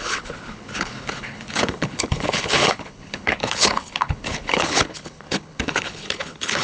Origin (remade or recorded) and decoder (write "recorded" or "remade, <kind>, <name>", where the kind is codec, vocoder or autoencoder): remade, codec, HILCodec